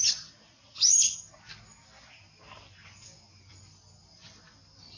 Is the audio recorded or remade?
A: recorded